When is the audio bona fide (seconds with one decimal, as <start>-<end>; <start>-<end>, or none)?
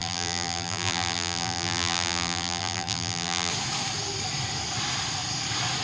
3.5-5.8